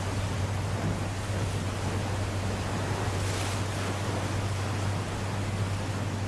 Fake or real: real